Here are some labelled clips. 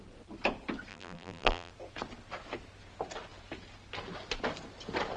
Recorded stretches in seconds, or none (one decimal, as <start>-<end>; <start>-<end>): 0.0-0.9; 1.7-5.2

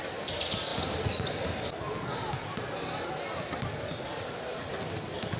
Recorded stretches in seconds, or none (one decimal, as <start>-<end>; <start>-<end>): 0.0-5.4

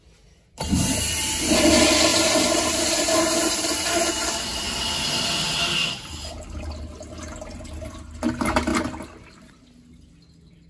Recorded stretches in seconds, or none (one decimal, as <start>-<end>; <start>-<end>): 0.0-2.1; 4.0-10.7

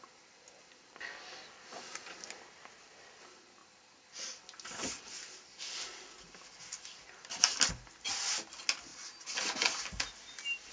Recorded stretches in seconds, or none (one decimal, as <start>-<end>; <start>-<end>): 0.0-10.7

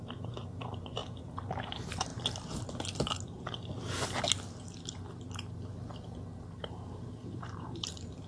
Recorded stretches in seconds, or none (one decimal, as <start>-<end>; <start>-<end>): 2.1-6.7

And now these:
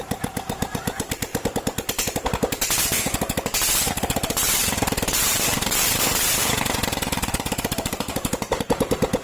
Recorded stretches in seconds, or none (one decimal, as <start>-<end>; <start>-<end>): 1.3-3.9